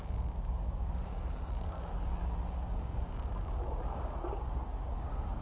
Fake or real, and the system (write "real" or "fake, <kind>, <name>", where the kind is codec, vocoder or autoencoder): fake, codec, DAC